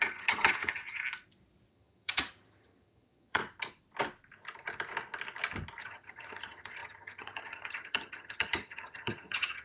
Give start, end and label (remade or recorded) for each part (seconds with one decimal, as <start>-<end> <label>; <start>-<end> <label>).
0.0-0.8 remade; 0.8-1.7 recorded; 1.7-3.4 remade; 3.4-5.8 recorded; 5.8-9.6 remade